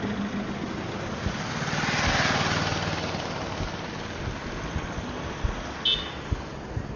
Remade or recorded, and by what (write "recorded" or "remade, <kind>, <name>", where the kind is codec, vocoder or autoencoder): recorded